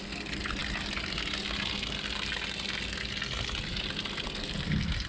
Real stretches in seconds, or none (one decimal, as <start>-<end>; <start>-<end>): 0.0-5.1